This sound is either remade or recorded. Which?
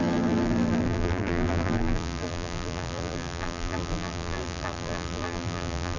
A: remade